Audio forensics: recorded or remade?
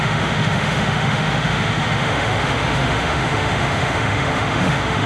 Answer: remade